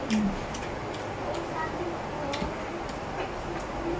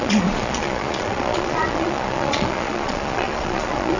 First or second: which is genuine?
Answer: first